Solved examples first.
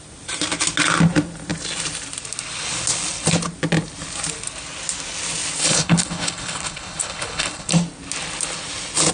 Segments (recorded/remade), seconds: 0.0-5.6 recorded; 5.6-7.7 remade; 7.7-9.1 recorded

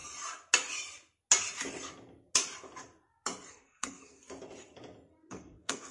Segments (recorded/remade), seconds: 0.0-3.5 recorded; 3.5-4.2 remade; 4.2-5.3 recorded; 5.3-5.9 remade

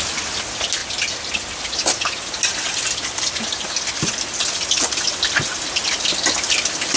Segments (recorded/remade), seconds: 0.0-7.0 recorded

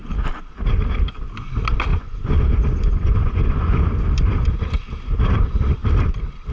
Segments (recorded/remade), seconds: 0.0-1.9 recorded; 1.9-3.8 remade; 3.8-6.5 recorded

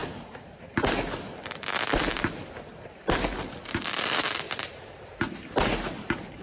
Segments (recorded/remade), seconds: 0.0-1.7 remade; 1.7-2.1 recorded; 2.1-5.8 remade; 5.8-6.4 recorded

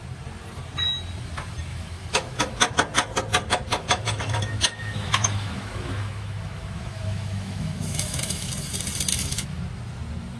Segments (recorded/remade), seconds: 0.0-1.7 recorded; 1.7-2.7 remade; 2.7-3.7 recorded; 3.7-8.5 remade; 8.5-9.1 recorded; 9.1-9.6 remade; 9.6-10.4 recorded

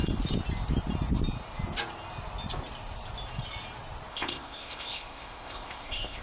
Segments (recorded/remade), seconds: 0.0-4.1 recorded; 4.1-6.2 remade